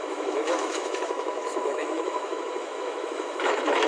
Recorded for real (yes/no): no